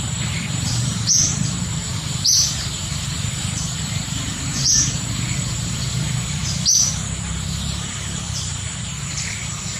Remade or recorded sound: remade